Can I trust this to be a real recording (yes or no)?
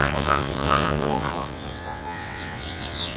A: no